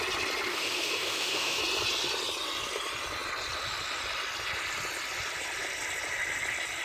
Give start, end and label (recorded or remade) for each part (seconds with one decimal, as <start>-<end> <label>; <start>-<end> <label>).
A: 0.0-0.5 recorded; 0.5-1.6 remade; 1.6-6.8 recorded